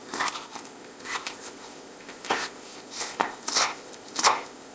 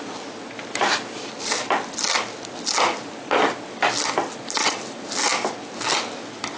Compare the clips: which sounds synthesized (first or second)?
first